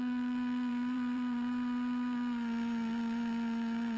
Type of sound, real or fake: fake